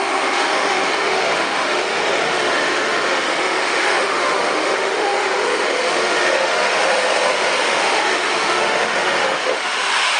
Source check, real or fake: fake